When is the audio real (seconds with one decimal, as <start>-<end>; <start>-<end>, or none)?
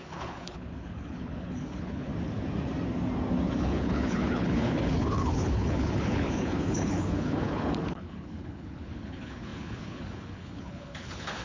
2.1-3.6